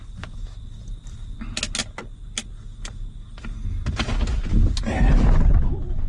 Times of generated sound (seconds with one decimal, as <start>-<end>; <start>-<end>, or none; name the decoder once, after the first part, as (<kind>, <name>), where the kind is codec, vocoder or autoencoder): none